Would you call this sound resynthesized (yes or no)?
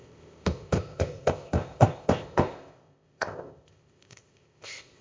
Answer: yes